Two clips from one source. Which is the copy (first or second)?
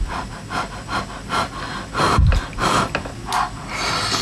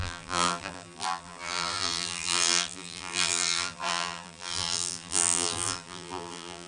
second